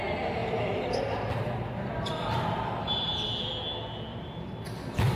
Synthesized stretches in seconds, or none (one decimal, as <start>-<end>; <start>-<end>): 0.4-3.5; 4.1-5.2